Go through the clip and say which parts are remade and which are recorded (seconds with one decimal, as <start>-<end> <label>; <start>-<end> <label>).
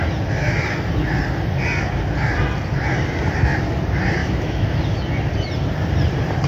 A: 0.0-4.2 recorded; 4.2-4.8 remade; 4.8-6.5 recorded